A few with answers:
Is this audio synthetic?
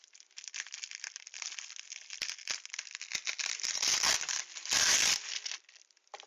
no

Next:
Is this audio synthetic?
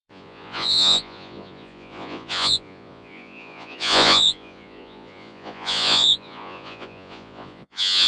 yes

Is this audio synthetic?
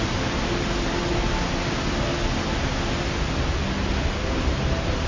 no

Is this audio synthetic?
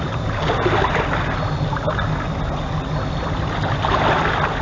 no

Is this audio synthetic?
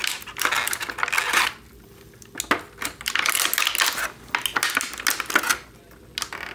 no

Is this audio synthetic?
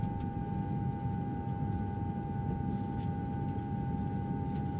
no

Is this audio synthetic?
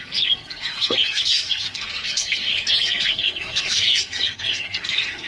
yes